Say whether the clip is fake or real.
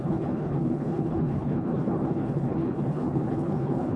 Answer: fake